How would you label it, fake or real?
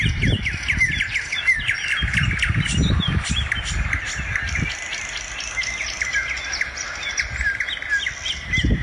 real